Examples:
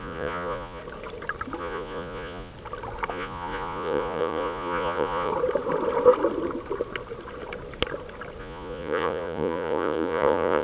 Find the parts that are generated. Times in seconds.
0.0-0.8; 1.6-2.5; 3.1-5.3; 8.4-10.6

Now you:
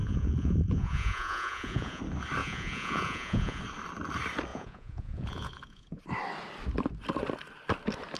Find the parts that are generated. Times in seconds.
0.0-2.0; 2.4-3.6; 4.5-6.0

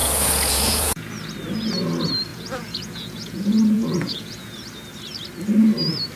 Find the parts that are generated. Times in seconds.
0.0-1.1; 2.3-4.6

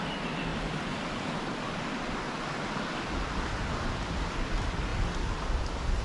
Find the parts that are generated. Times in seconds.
none

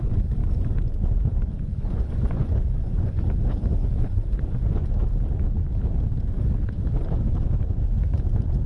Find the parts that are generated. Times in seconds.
0.4-3.2; 3.8-4.9

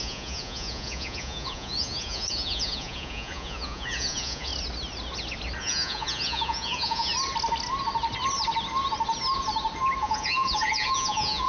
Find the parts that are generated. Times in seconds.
0.0-4.5; 5.6-7.1; 10.0-11.5

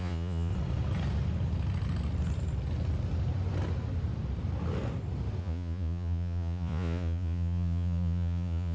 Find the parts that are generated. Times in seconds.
0.0-0.5; 5.4-8.7

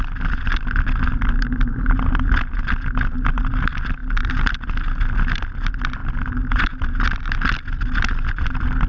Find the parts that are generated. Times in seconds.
none